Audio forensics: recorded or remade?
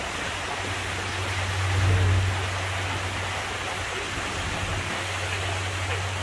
recorded